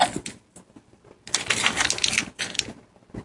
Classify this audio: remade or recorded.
recorded